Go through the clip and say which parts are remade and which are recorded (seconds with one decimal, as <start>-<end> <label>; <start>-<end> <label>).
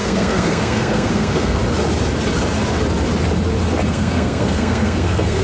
0.0-1.6 remade; 1.6-3.9 recorded; 3.9-5.4 remade